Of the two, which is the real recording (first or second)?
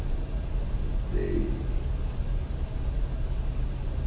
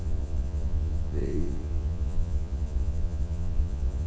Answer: first